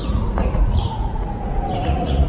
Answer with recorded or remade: remade